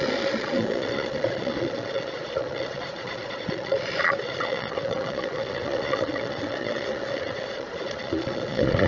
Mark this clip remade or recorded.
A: remade